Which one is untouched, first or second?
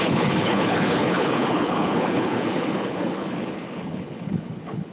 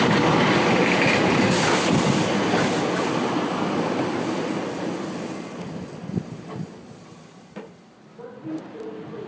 second